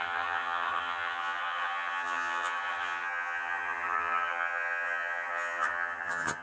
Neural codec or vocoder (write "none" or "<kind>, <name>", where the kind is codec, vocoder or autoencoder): vocoder, HiFi-GAN